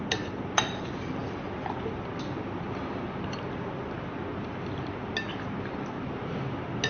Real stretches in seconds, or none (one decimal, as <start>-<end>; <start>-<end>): 0.0-6.9